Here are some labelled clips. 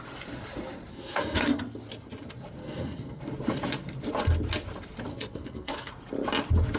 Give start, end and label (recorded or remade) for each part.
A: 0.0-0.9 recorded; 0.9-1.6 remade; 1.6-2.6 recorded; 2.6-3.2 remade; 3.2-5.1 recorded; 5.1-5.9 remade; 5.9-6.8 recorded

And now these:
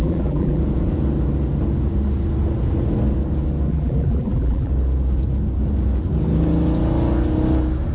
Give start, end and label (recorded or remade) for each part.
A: 0.0-0.6 remade; 0.6-3.7 recorded; 3.7-4.7 remade; 4.7-7.9 recorded

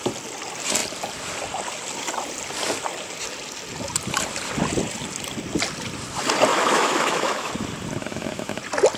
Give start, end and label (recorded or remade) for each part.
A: 0.0-6.5 recorded; 6.5-7.5 remade; 7.5-8.0 recorded; 8.0-8.6 remade; 8.6-9.0 recorded

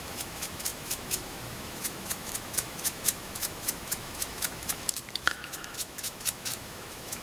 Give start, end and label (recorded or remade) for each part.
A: 0.0-7.2 remade

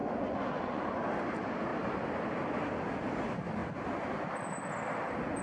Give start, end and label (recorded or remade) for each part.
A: 0.0-0.8 remade; 0.8-5.4 recorded